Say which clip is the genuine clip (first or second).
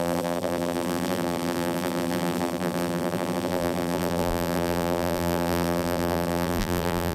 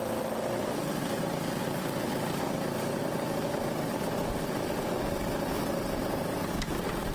second